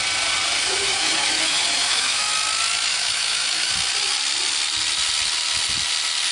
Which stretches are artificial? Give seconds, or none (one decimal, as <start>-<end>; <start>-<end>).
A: 0.6-2.3; 2.9-3.7